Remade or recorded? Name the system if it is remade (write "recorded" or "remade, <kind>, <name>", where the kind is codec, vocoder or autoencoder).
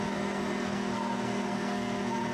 remade, codec, SNAC